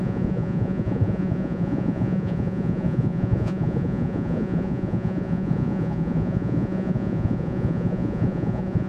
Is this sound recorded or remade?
remade